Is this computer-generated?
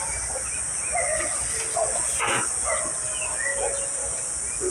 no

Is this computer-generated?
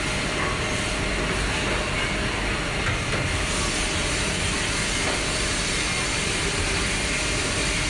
no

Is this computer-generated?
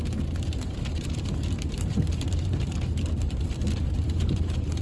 yes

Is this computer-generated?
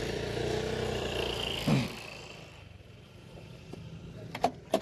no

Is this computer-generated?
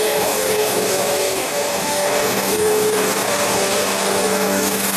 yes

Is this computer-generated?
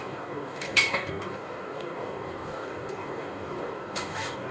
yes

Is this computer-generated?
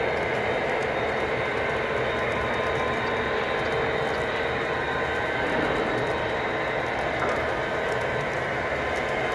no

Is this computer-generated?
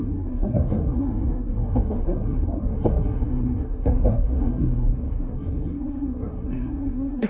yes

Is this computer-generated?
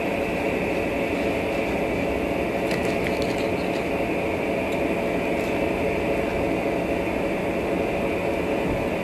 no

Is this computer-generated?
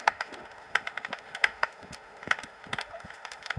yes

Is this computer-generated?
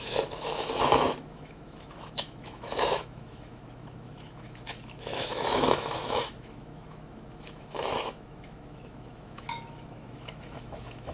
yes